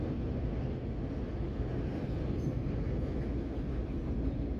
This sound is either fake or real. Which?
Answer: real